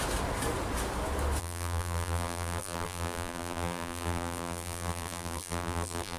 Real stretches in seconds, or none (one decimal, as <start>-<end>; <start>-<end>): 0.0-1.4